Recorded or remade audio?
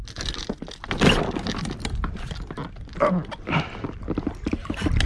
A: recorded